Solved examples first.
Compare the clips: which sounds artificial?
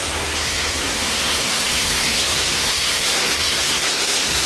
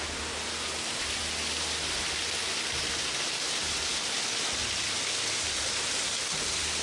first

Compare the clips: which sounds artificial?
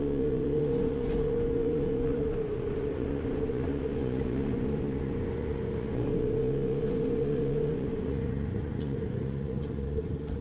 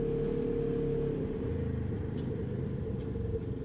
first